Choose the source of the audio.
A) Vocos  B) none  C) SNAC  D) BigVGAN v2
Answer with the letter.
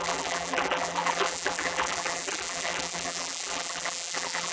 D